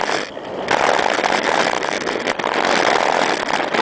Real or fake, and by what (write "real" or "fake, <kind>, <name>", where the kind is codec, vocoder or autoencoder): real